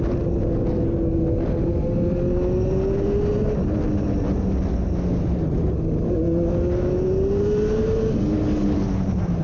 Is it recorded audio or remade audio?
recorded